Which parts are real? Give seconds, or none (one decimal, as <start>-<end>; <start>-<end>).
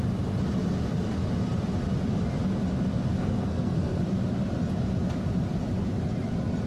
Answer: 0.0-3.1; 4.0-6.7